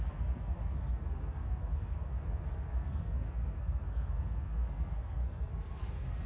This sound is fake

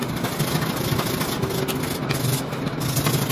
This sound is real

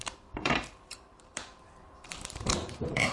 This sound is fake